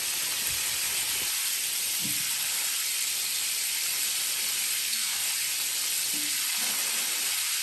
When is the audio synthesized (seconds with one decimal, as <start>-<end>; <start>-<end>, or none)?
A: 4.8-5.3